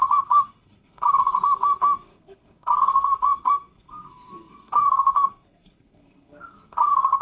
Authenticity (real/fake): fake